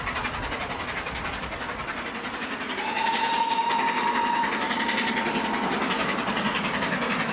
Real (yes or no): yes